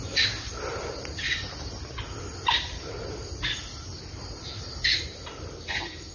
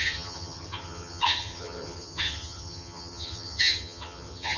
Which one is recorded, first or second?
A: first